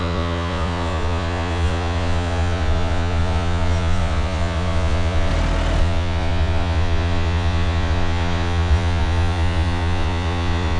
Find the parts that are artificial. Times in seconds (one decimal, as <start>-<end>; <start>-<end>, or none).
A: 0.0-5.3; 5.8-10.8